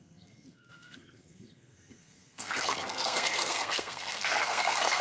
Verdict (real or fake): fake